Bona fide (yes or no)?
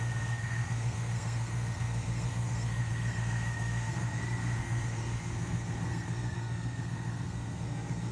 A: no